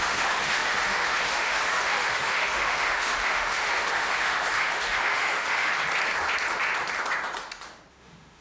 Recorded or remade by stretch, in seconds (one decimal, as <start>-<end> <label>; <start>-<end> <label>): 0.0-5.7 remade; 5.7-7.9 recorded; 7.9-8.4 remade